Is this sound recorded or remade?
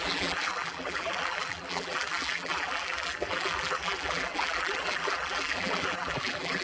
remade